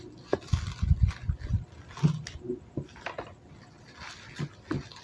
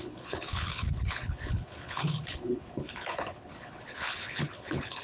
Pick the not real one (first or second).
second